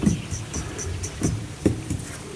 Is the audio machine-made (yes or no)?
no